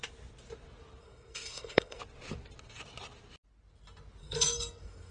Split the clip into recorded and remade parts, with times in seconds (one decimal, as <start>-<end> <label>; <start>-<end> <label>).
0.0-1.0 recorded; 1.0-2.0 remade; 2.0-4.2 recorded; 4.2-5.1 remade